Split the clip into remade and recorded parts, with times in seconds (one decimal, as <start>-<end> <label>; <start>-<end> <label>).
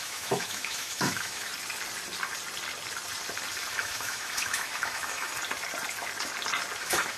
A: 0.0-1.5 remade; 1.5-3.7 recorded; 3.7-5.3 remade; 5.3-6.8 recorded; 6.8-7.2 remade